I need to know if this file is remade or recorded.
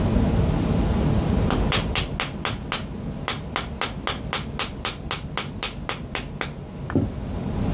recorded